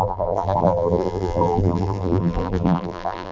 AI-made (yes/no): yes